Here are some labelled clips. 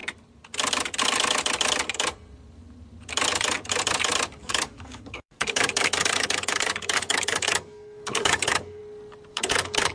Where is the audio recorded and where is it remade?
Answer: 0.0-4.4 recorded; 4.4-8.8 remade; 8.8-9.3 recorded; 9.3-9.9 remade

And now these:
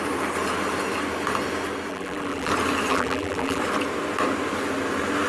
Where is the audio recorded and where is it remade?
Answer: 0.0-1.9 recorded; 1.9-2.5 remade; 2.5-2.9 recorded; 2.9-3.6 remade; 3.6-5.3 recorded

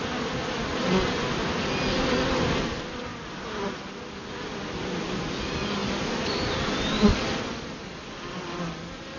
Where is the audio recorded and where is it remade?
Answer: 0.0-9.2 recorded

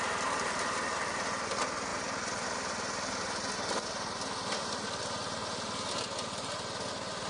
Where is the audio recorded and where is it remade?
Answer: 0.0-1.9 recorded; 1.9-2.7 remade; 2.7-7.3 recorded